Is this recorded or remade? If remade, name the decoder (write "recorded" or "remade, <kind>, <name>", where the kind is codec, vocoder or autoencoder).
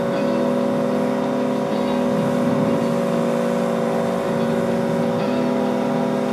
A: recorded